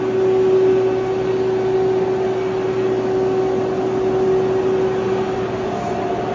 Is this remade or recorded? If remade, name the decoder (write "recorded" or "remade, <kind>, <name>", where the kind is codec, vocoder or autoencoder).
recorded